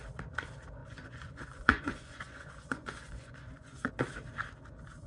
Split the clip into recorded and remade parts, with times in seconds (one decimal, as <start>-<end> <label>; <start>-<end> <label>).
0.0-0.8 recorded; 0.8-3.9 remade; 3.9-5.1 recorded